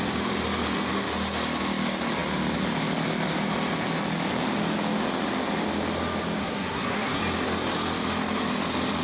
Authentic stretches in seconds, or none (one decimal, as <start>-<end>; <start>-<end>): 0.0-6.4; 7.2-9.0